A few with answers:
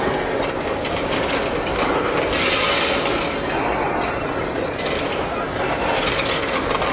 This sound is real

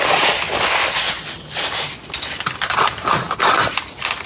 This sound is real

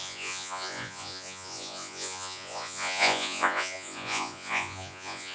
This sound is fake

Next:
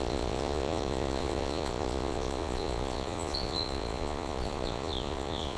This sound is fake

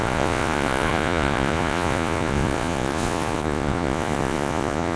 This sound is fake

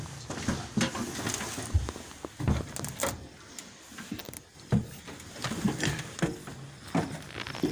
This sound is real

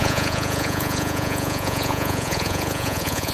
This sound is fake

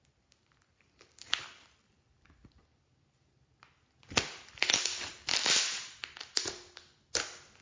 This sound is real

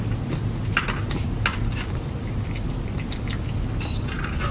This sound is real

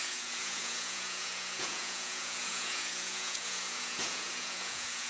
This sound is fake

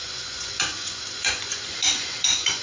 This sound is fake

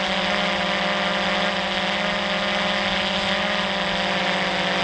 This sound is real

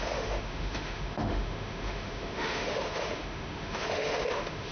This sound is fake